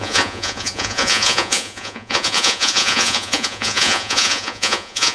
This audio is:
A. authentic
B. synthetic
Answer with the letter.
B